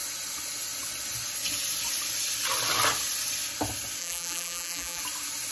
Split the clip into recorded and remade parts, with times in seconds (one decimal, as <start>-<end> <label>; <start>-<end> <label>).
0.0-4.0 recorded; 4.0-5.0 remade; 5.0-5.5 recorded